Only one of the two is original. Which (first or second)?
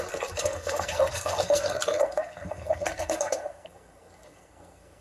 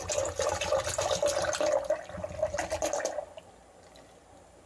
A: second